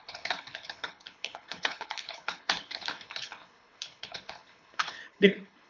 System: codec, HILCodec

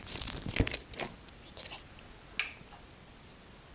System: none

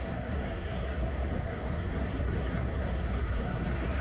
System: codec, SNAC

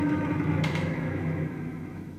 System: autoencoder, DAC-VAE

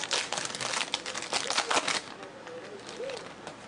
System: none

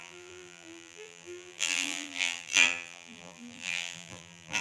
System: vocoder, BigVGAN v2